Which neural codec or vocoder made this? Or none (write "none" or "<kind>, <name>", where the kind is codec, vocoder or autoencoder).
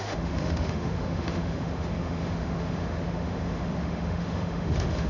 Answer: autoencoder, DAC-VAE